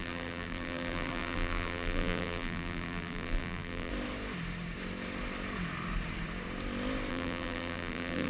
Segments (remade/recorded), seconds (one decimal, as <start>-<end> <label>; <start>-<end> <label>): 0.0-3.9 remade; 3.9-7.1 recorded; 7.1-8.3 remade